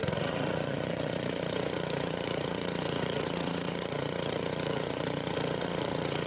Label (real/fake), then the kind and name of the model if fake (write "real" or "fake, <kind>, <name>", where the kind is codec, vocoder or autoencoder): fake, vocoder, Vocos